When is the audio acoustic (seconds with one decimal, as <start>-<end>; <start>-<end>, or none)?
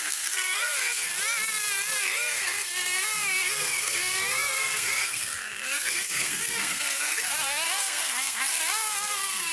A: 1.1-2.0